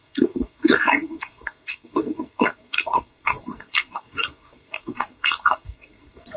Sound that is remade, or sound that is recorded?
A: remade